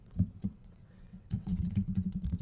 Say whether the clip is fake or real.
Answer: fake